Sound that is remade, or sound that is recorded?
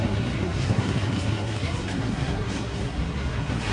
remade